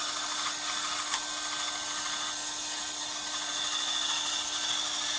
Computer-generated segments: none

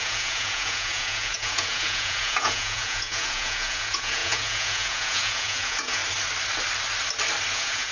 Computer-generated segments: 0.0-6.0 (vocoder, Vocos); 7.5-7.9

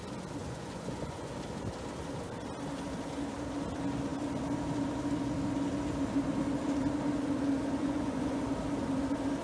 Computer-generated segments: 0.4-1.3 (vocoder, Vocos); 7.8-8.4

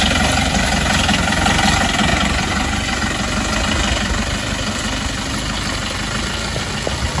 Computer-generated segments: 2.1-3.0 (vocoder, Vocos)